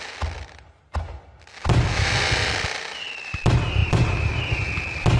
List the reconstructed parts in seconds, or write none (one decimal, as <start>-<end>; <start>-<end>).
3.8-4.4